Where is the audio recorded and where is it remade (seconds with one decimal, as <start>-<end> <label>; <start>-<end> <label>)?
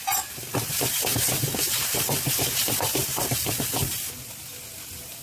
0.0-5.2 recorded